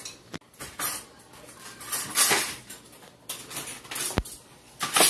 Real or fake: real